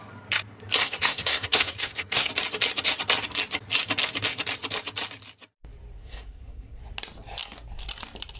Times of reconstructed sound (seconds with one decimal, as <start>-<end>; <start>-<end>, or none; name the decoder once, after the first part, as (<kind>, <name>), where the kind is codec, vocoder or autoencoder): 0.8-2.3 (codec, SNAC); 6.0-6.8